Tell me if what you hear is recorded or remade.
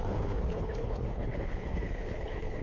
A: remade